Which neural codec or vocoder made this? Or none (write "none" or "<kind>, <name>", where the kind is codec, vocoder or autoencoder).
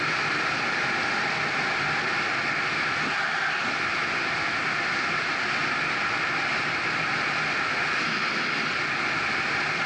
none